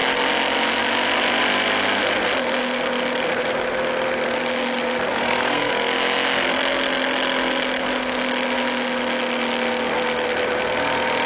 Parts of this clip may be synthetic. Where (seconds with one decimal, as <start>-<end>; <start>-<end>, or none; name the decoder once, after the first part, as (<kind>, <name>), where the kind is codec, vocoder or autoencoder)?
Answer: 5.1-5.7 (codec, SNAC)